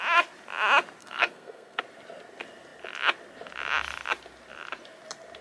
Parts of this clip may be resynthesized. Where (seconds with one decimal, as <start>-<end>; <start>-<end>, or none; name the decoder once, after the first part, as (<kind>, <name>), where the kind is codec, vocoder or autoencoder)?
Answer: 1.0-1.8 (codec, SNAC)